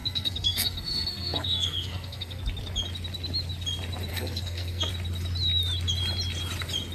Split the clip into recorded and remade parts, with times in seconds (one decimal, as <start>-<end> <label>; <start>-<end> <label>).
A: 0.0-2.4 remade; 2.4-4.1 recorded; 4.1-4.9 remade; 4.9-6.9 recorded